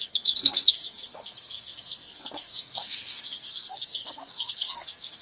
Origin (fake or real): fake